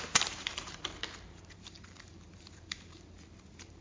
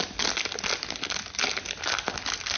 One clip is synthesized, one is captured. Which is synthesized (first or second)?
first